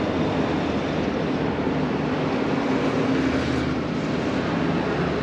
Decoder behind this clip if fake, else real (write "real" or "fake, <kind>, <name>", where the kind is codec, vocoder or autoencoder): real